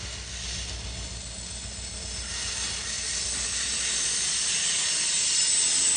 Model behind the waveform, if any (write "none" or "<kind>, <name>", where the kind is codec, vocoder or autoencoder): none